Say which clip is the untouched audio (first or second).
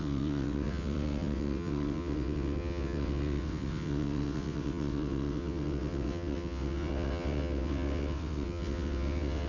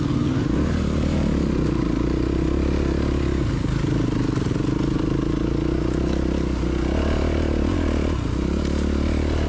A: second